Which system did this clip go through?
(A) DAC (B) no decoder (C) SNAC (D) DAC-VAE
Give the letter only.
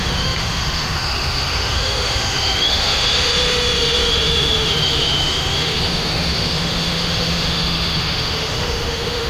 D